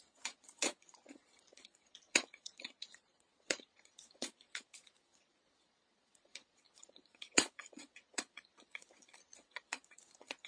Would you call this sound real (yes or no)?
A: no